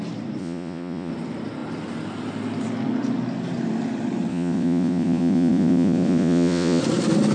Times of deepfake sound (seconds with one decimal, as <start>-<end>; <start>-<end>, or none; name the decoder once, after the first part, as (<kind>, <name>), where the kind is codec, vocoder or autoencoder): 0.4-1.1 (vocoder, Vocos); 4.3-6.8